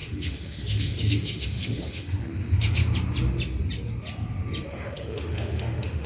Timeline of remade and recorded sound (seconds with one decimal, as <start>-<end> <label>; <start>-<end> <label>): 0.0-2.8 remade; 2.8-4.7 recorded; 4.7-6.1 remade